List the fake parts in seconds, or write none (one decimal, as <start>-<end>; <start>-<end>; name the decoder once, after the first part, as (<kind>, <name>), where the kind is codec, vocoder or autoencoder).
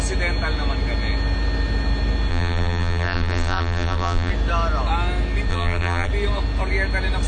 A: 2.3-4.3 (vocoder, BigVGAN v2); 5.5-6.1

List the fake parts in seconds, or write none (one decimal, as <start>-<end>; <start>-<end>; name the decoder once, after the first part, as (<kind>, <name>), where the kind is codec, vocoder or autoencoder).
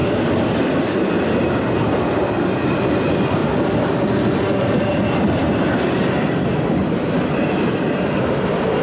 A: 0.0-3.4 (vocoder, BigVGAN v2); 3.9-5.4; 6.1-8.8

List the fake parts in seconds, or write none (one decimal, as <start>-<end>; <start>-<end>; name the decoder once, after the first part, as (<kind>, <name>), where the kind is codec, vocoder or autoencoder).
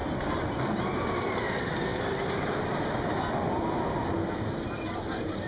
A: none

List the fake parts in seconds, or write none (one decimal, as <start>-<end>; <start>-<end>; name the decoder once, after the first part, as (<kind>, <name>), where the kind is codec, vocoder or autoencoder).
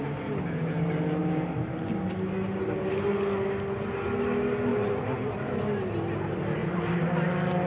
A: 1.2-2.0 (vocoder, BigVGAN v2); 4.7-5.6; 6.6-7.3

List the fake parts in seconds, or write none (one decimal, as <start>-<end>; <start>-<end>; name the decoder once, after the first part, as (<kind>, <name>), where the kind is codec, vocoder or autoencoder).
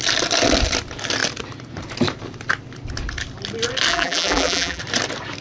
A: 3.9-4.8 (vocoder, BigVGAN v2)